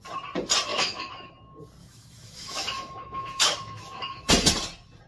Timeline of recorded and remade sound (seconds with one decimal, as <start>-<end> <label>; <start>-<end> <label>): 0.0-0.7 recorded; 0.7-1.3 remade; 1.3-1.8 recorded; 1.8-4.3 remade; 4.3-5.1 recorded